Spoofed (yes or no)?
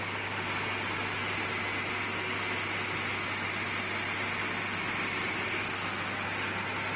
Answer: no